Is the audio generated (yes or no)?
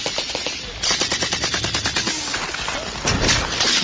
no